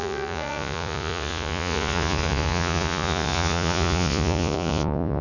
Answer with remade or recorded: remade